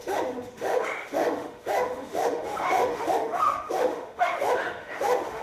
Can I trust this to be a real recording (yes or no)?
no